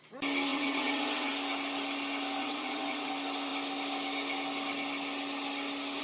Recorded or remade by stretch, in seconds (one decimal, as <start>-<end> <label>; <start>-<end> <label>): 0.0-0.5 recorded; 0.5-1.3 remade; 1.3-2.4 recorded; 2.4-3.1 remade; 3.1-6.0 recorded